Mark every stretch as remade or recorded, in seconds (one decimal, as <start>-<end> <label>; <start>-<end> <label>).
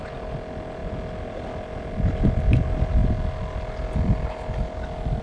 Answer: 0.0-5.2 recorded